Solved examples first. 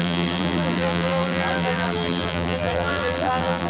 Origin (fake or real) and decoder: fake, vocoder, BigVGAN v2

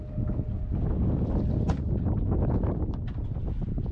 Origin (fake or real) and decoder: real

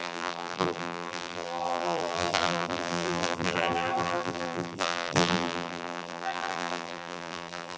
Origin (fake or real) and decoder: fake, vocoder, BigVGAN v2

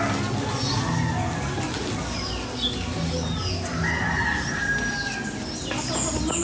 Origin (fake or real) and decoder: real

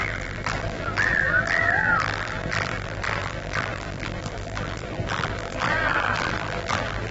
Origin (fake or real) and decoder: fake, vocoder, BigVGAN v2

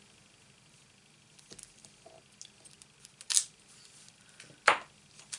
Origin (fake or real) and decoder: real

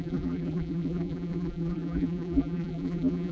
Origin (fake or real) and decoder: fake, vocoder, BigVGAN v2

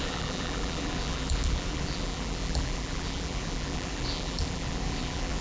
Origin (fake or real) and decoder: fake, vocoder, BigVGAN v2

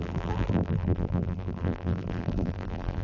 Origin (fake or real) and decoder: fake, vocoder, BigVGAN v2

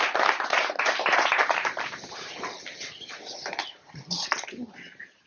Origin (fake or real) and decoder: fake, vocoder, BigVGAN v2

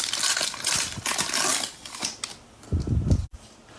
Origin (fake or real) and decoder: real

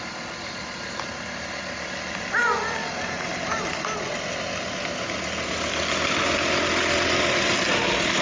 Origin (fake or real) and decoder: real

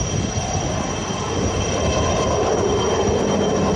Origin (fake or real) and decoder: real